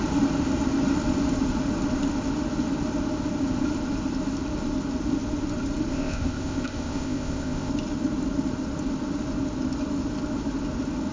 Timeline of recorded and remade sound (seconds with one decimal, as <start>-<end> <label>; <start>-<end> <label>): 0.0-5.9 recorded; 5.9-7.7 remade; 7.7-11.1 recorded